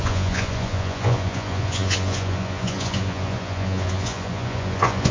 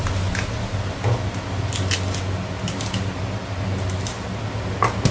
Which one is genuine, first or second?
second